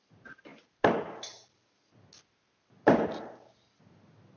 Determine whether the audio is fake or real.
real